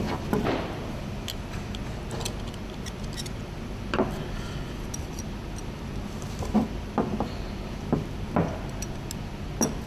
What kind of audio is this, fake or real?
real